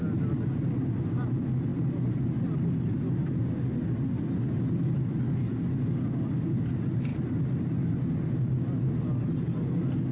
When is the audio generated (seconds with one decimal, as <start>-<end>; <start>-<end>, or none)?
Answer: none